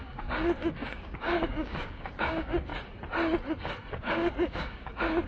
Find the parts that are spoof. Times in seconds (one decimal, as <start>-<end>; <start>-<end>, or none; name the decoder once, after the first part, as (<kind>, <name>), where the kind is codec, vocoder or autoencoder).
0.0-2.7 (codec, DAC); 3.9-5.3